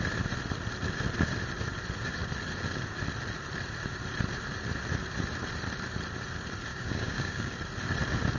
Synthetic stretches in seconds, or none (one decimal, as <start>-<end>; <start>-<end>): 6.7-7.5